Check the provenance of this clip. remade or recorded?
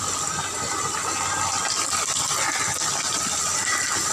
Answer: recorded